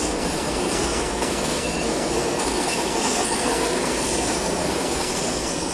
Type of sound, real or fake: fake